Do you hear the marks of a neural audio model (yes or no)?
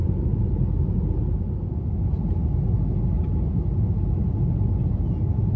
no